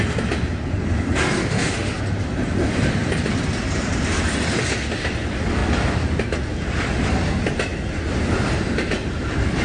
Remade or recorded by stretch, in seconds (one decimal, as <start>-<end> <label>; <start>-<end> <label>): 0.0-1.4 recorded; 1.4-2.0 remade; 2.0-9.6 recorded